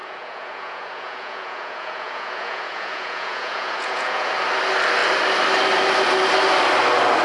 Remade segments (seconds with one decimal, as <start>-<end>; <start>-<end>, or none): 0.0-4.3